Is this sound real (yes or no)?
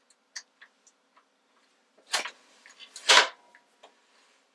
yes